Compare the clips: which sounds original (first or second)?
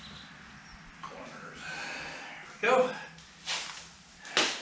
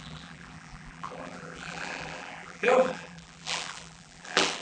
first